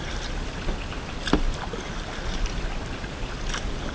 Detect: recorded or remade recorded